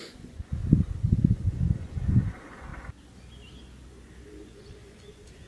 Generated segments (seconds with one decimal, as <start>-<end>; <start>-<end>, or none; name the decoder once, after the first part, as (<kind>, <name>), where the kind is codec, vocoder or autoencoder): 0.0-0.6 (vocoder, Vocos); 1.3-2.7; 4.3-5.5